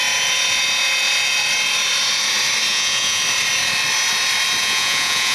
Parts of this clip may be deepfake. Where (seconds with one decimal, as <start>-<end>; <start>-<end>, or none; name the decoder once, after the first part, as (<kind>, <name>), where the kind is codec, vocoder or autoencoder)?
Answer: 2.7-3.2 (vocoder, Vocos); 4.6-5.3